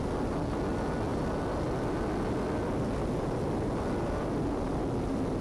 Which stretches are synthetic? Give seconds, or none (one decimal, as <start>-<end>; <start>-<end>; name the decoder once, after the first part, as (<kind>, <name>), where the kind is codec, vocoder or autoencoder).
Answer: none